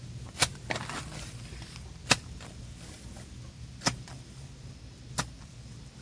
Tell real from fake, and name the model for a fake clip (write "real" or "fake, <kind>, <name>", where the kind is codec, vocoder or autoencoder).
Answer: real